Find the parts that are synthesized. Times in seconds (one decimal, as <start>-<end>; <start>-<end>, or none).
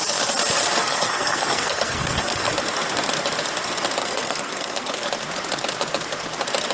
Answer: 0.8-2.5; 4.0-5.1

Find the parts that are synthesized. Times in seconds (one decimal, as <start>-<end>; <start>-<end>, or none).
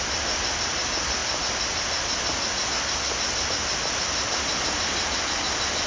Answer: none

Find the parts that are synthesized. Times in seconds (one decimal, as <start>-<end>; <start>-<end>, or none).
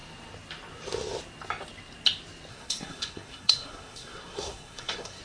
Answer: 2.5-5.2